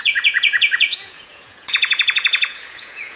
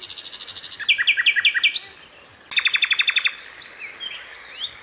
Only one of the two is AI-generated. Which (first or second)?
first